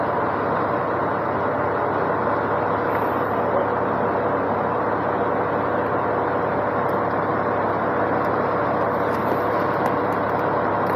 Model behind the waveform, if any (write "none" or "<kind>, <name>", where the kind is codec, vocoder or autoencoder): none